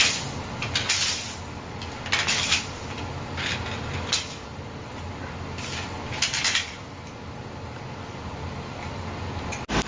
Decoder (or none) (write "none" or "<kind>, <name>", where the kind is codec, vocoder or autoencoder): none